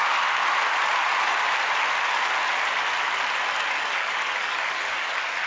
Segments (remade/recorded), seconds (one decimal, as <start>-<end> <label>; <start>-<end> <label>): 0.0-0.4 remade; 0.4-3.7 recorded; 3.7-5.5 remade

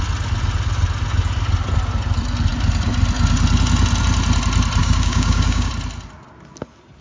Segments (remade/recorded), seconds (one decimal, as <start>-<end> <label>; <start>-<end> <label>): 0.0-4.8 recorded; 4.8-5.7 remade; 5.7-7.0 recorded

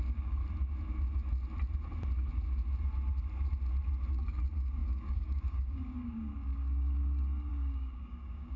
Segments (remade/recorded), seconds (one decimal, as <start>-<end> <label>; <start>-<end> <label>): 0.0-0.4 remade; 0.4-4.1 recorded; 4.1-8.6 remade

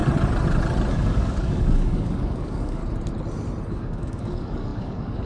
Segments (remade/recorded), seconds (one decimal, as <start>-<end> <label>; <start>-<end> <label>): 0.0-0.9 recorded; 0.9-2.8 remade; 2.8-3.7 recorded; 3.7-5.3 remade